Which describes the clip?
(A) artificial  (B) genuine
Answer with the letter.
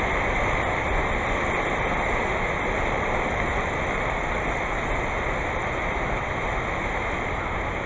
B